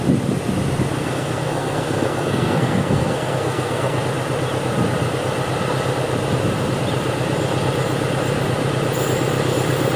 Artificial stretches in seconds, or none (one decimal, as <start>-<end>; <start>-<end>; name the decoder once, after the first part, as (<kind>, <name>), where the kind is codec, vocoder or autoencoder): 1.0-4.0 (codec, SNAC)